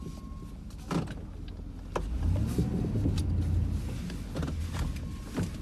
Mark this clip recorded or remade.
recorded